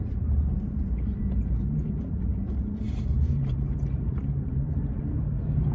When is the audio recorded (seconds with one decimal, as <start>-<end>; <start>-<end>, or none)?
none